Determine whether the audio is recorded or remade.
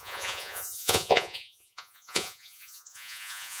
remade